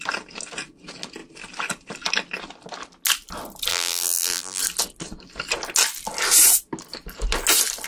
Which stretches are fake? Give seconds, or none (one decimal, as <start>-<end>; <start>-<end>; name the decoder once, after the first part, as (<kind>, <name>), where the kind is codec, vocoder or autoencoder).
3.7-4.6 (vocoder, BigVGAN v2)

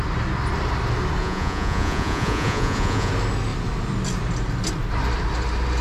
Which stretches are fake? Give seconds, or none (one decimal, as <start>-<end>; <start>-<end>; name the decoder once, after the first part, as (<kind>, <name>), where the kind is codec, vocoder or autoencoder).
1.2-3.1 (vocoder, Vocos)

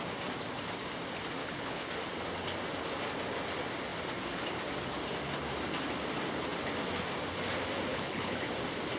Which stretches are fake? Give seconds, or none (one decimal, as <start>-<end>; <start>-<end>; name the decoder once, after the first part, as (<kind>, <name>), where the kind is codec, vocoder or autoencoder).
1.4-1.9 (codec, HILCodec); 7.9-8.5

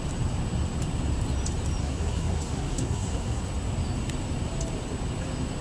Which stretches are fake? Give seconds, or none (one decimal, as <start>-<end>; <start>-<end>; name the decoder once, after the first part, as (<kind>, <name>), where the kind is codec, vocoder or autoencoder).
1.8-3.4 (codec, SNAC)

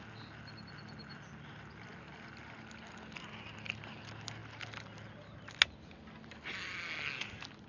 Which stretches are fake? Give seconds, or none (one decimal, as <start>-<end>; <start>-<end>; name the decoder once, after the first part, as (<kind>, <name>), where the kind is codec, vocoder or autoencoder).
none

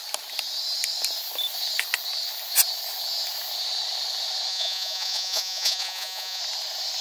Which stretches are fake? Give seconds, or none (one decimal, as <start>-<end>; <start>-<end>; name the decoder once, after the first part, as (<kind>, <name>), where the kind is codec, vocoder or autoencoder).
4.5-6.4 (vocoder, Vocos)

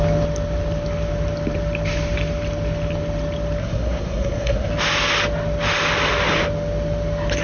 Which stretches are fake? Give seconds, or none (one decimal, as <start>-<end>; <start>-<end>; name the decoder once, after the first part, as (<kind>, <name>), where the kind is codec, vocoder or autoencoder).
3.6-4.7 (codec, SNAC)

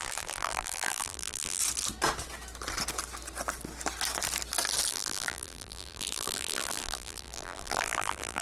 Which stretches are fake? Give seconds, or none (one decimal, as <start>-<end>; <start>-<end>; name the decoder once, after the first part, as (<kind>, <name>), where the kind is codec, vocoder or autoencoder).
0.0-1.6 (vocoder, BigVGAN v2); 4.9-8.4